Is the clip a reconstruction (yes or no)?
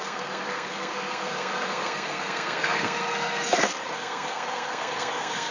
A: yes